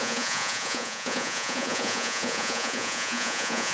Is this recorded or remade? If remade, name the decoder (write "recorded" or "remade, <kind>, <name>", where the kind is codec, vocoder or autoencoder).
remade, vocoder, Vocos